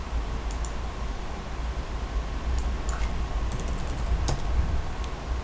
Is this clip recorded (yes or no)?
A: yes